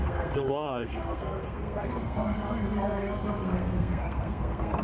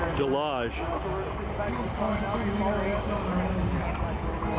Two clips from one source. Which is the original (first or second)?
second